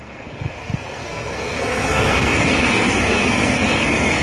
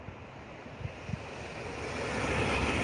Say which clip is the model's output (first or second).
first